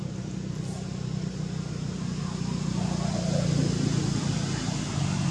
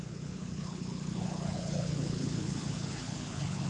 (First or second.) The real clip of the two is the first